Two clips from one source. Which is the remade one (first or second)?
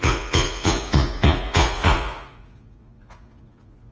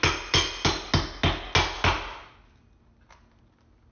first